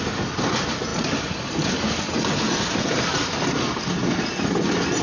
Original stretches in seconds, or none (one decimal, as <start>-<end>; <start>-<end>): 0.0-5.0